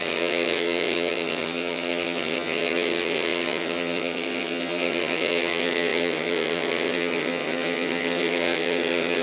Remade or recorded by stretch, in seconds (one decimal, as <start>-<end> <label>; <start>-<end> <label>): 0.0-9.2 remade